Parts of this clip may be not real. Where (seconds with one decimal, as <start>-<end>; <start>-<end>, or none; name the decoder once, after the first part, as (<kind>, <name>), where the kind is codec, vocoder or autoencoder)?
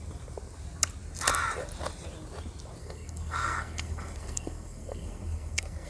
2.8-5.9 (codec, SNAC)